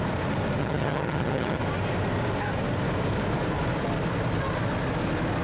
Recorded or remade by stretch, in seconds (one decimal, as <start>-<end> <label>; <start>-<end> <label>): 0.0-0.6 recorded; 0.6-1.6 remade; 1.6-5.4 recorded